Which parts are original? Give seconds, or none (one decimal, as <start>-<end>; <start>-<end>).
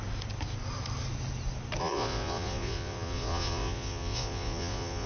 0.0-1.8